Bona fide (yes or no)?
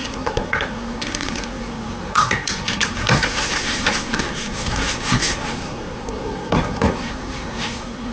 no